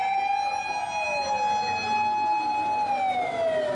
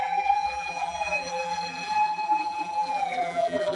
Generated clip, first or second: second